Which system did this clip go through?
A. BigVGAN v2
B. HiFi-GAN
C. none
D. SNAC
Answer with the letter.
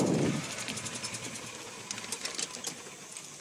C